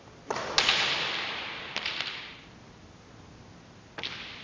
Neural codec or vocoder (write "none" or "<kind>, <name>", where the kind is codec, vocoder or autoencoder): none